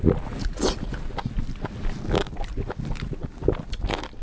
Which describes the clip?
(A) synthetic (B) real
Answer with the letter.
B